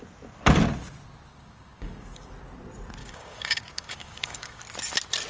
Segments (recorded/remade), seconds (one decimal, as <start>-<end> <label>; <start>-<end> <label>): 0.0-1.3 recorded; 1.3-2.3 remade; 2.3-3.0 recorded; 3.0-4.6 remade; 4.6-5.3 recorded